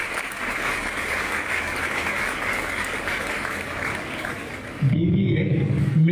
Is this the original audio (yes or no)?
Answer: no